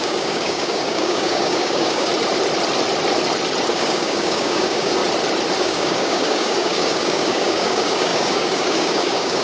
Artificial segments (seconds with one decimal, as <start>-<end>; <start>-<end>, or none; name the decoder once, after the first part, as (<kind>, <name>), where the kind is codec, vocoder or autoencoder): 0.0-2.1 (codec, DAC); 3.7-5.0; 5.6-9.4